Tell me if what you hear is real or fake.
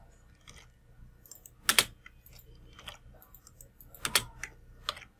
real